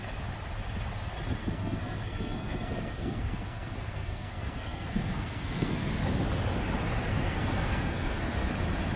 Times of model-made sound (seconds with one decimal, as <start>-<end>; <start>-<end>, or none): 1.4-5.9; 7.1-8.5